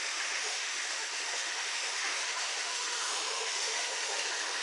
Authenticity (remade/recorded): remade